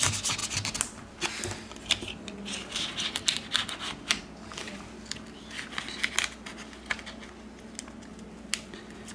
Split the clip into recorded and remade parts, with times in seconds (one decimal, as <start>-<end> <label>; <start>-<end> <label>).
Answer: 0.0-9.1 recorded